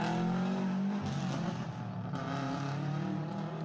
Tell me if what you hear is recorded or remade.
recorded